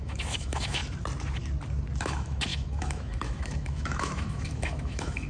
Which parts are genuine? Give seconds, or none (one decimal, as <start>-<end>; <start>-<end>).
0.8-2.0